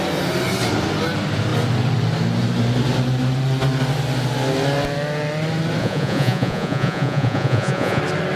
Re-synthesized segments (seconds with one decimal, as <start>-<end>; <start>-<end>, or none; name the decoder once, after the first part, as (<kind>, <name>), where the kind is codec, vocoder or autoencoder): 5.8-8.0 (vocoder, Vocos)